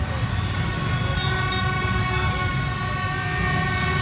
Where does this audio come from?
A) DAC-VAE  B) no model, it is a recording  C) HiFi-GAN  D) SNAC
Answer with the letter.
B